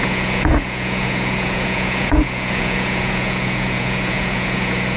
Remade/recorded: remade